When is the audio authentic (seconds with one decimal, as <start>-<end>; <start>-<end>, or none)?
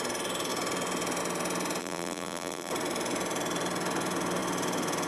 0.0-1.8; 2.7-5.1